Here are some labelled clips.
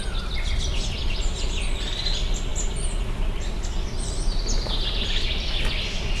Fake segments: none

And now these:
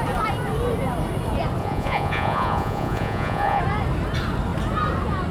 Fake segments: 1.6-3.6 (vocoder, Vocos)

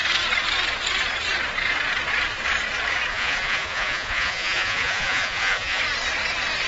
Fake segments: 3.1-5.8 (vocoder, Vocos)

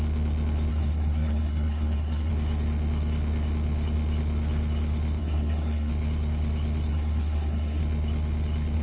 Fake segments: 0.7-2.3 (codec, SNAC); 5.2-5.9; 6.9-7.8

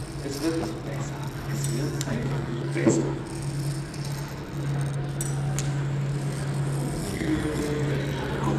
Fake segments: 1.9-3.2 (codec, SNAC); 7.0-7.6

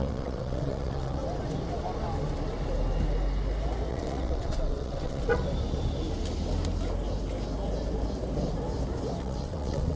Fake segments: 0.0-1.2 (vocoder, WaveNeXt); 3.9-5.4; 9.2-10.0

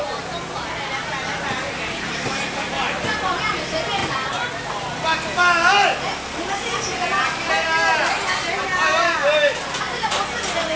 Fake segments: none